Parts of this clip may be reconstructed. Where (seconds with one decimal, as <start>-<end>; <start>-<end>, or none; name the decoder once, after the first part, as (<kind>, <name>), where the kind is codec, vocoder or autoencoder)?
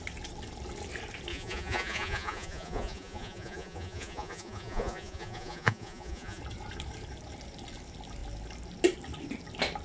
1.3-6.4 (vocoder, Vocos)